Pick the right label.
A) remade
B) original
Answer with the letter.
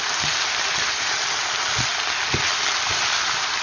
B